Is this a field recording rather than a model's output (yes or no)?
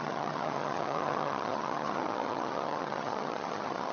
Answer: no